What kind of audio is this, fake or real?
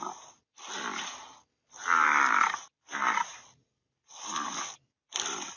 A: real